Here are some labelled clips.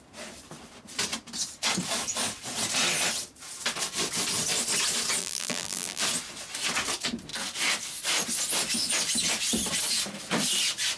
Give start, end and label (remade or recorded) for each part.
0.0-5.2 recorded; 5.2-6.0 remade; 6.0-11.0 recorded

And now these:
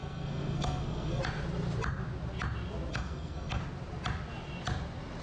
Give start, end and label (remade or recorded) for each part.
0.0-1.2 remade; 1.2-2.9 recorded; 2.9-3.6 remade; 3.6-5.2 recorded

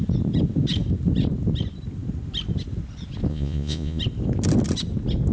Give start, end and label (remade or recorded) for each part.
0.0-3.3 recorded; 3.3-4.0 remade; 4.0-5.3 recorded

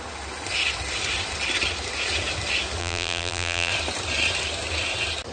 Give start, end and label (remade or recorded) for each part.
0.0-2.8 recorded; 2.8-3.7 remade; 3.7-5.3 recorded

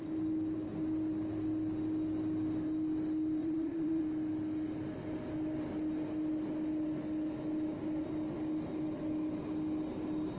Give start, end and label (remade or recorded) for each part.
0.0-3.4 recorded; 3.4-4.0 remade; 4.0-10.4 recorded